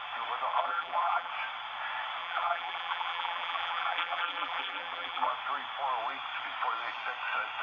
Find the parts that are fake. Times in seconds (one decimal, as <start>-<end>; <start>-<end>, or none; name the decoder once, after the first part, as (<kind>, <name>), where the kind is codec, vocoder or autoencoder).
0.5-1.3 (vocoder, BigVGAN v2); 2.2-5.3